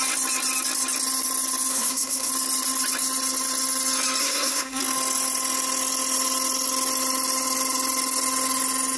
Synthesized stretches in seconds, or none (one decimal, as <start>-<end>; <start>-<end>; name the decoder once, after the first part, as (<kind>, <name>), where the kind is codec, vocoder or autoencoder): 1.7-2.3 (codec, SNAC); 4.2-4.8